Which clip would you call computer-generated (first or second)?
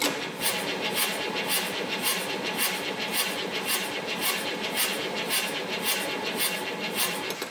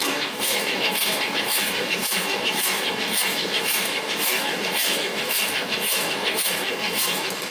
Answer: second